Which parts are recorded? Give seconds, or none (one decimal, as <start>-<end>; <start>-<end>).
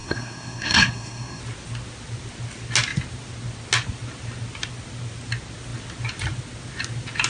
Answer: 1.4-7.3